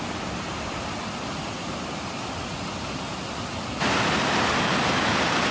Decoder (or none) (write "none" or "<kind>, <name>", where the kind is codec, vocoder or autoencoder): none